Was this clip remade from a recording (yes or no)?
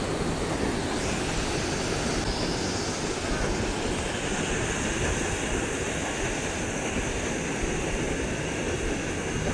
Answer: no